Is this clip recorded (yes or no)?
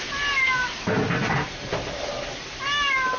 yes